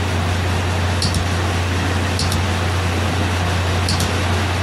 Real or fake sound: real